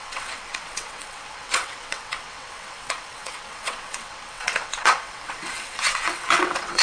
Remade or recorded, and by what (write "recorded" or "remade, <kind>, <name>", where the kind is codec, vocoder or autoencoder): remade, vocoder, WaveNeXt